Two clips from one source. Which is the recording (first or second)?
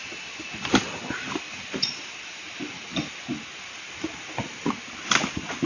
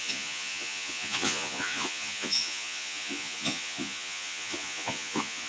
first